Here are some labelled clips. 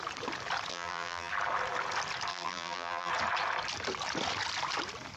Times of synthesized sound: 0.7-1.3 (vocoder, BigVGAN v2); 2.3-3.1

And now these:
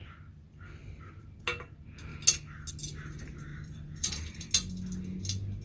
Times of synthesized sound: 3.5-4.5 (vocoder, BigVGAN v2)